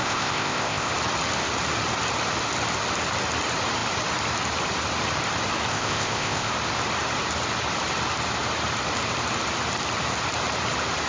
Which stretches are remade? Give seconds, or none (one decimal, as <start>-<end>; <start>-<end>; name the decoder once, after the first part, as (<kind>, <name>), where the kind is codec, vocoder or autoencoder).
0.0-0.9 (codec, ZipCodec); 5.7-6.5